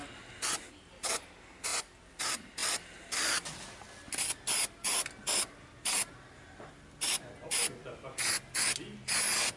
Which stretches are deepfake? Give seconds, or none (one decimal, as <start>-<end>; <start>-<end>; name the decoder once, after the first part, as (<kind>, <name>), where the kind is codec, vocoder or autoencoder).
none